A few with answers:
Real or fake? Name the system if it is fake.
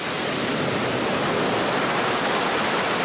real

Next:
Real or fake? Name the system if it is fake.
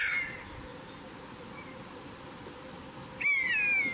real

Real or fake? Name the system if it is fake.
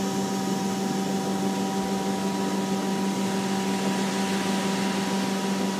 real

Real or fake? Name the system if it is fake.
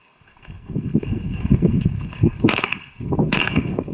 fake, codec, SNAC